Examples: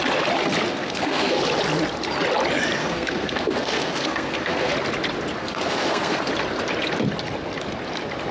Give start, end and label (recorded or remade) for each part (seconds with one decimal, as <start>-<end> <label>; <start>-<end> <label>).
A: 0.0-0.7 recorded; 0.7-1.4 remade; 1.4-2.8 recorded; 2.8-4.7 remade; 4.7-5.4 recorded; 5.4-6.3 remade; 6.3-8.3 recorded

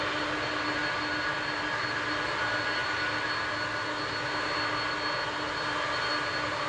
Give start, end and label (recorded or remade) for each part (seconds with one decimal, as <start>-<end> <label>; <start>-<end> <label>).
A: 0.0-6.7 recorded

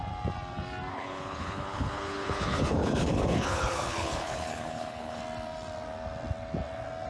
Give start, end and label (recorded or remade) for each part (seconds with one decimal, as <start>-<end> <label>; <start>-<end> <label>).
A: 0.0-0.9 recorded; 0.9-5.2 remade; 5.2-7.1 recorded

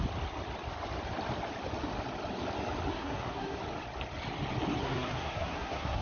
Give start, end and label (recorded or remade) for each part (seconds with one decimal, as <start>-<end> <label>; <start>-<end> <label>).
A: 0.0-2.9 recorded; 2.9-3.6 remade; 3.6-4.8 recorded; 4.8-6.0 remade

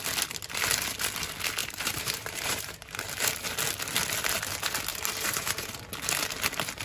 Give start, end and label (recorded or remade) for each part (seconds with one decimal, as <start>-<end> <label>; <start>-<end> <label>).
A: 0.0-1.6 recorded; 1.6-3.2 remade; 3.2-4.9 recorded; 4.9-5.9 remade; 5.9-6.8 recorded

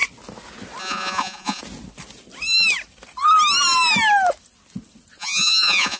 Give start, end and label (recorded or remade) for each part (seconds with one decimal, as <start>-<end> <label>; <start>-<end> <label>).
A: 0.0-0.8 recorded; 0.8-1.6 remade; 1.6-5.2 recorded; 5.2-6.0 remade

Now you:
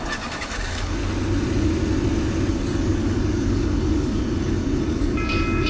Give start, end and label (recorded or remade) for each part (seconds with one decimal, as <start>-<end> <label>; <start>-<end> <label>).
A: 0.0-1.0 remade; 1.0-2.5 recorded; 2.5-5.7 remade

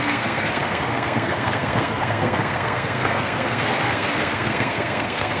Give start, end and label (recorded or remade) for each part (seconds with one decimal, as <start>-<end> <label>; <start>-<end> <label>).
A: 0.0-5.4 remade